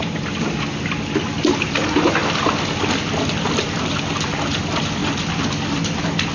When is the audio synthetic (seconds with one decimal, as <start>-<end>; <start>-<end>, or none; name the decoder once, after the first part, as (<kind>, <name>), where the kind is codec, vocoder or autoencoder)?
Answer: none